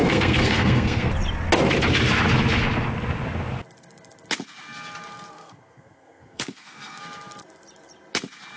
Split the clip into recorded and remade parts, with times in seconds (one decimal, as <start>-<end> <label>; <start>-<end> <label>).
0.0-1.1 remade; 1.1-5.3 recorded; 5.3-7.0 remade; 7.0-8.6 recorded